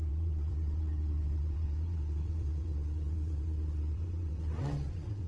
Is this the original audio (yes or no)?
no